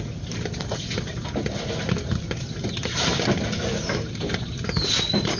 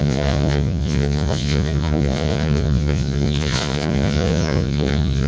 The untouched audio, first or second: first